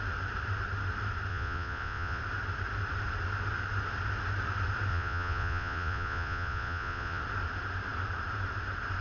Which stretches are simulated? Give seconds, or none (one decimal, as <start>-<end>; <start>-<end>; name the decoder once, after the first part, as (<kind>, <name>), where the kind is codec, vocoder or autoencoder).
1.3-2.2 (vocoder, Vocos); 4.9-7.2